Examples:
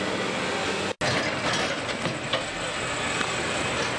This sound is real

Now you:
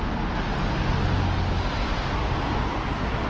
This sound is real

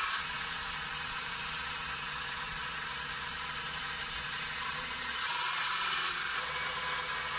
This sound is fake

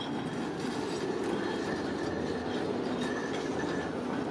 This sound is real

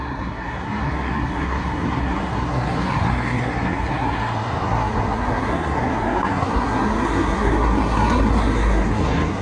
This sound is fake